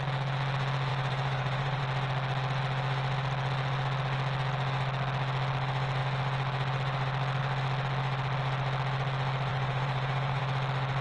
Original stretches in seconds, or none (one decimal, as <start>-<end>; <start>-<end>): 0.0-0.9; 1.8-9.5; 10.4-11.0